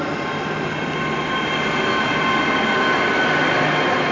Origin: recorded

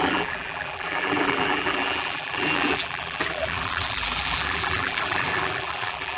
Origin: remade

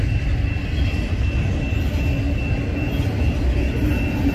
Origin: recorded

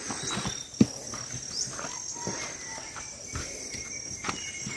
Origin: recorded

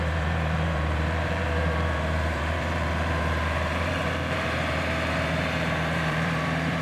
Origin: remade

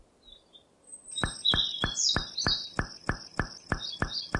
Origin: remade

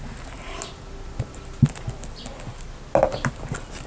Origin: recorded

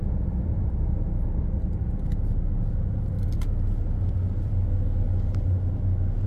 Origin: recorded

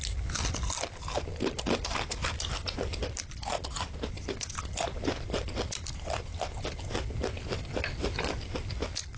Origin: recorded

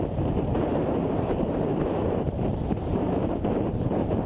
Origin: remade